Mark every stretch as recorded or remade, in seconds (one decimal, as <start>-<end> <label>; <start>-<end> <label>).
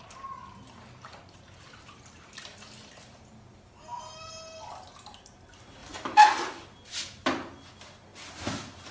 0.0-8.9 recorded